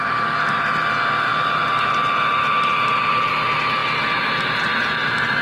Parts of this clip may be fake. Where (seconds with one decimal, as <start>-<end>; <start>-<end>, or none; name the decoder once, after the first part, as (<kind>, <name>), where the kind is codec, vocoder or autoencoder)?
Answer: none